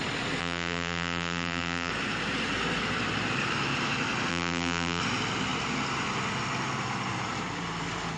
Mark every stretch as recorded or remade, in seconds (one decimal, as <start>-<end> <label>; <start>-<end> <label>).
0.0-0.4 recorded; 0.4-1.9 remade; 1.9-4.3 recorded; 4.3-5.0 remade; 5.0-8.2 recorded